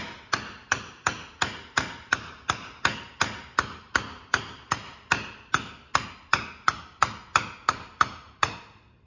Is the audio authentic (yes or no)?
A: yes